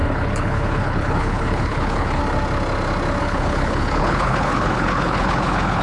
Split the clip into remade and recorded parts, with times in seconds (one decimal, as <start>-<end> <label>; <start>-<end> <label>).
0.0-2.2 remade; 2.2-3.2 recorded; 3.2-5.8 remade